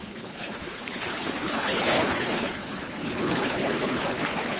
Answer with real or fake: fake